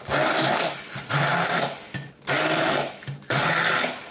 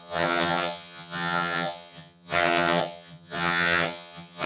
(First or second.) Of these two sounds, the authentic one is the first